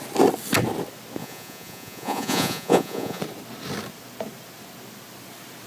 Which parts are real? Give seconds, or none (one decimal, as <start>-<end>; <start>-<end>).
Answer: 0.0-1.2; 3.2-5.7